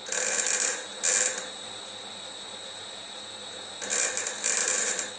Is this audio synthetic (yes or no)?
no